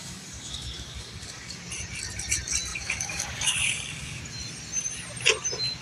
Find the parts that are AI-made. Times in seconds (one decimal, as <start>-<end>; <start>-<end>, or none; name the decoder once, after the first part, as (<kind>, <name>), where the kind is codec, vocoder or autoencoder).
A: 0.0-1.6 (codec, DAC); 2.7-4.2